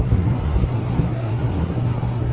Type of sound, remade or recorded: remade